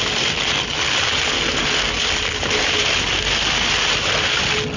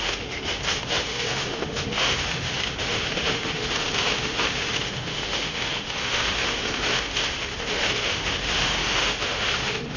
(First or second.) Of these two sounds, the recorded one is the first